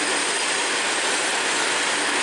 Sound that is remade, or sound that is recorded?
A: recorded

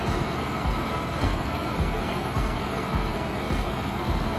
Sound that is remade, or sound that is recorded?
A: remade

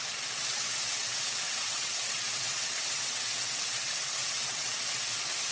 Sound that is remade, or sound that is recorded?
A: remade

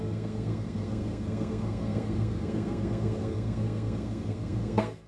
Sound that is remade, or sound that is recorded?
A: remade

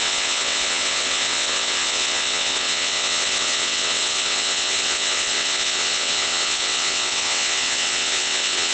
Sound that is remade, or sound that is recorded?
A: remade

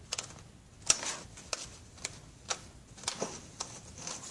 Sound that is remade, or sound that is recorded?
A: recorded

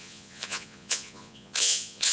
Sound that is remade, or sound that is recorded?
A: remade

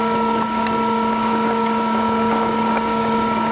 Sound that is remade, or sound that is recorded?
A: remade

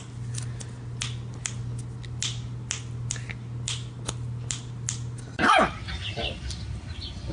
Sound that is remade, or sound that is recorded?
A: recorded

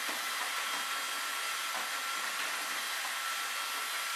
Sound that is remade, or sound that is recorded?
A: recorded